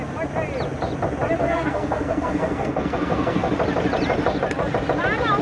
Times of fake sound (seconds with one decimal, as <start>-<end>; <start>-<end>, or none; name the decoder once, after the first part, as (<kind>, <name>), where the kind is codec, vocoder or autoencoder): 1.4-3.5 (codec, SNAC)